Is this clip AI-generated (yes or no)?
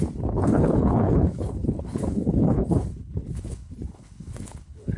yes